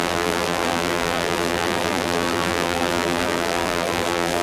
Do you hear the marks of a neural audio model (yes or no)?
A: yes